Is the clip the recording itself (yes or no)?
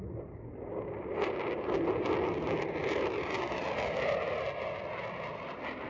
yes